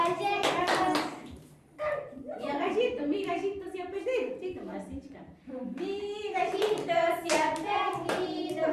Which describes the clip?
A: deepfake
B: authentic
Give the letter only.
A